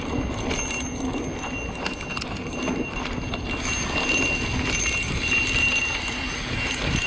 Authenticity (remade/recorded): recorded